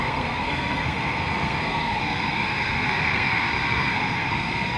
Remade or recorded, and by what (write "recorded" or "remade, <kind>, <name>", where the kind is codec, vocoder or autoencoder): remade, codec, SNAC